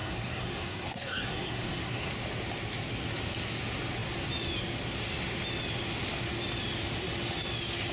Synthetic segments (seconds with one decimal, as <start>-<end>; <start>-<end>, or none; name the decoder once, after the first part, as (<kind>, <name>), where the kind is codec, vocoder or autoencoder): 0.0-2.1 (codec, SNAC)